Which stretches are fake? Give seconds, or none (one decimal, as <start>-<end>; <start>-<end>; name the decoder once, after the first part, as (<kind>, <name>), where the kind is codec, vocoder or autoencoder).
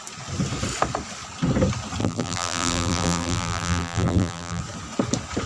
2.0-4.6 (vocoder, BigVGAN v2)